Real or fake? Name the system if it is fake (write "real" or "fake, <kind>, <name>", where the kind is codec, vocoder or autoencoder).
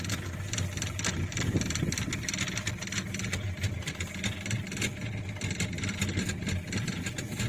real